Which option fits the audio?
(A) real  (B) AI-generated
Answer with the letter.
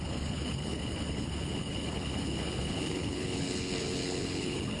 B